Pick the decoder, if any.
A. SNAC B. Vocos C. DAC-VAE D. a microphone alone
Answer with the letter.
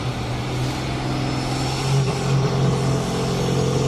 D